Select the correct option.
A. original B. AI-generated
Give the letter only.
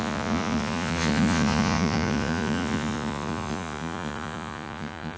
B